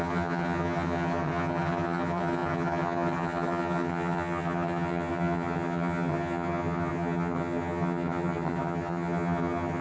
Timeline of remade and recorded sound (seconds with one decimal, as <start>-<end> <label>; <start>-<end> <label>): 0.0-9.8 remade